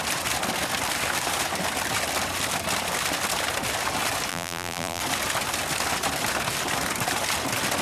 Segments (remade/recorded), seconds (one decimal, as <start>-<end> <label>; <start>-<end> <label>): 0.0-4.3 recorded; 4.3-5.0 remade; 5.0-7.8 recorded